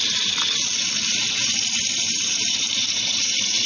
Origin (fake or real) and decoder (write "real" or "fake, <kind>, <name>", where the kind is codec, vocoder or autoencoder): fake, vocoder, BigVGAN v2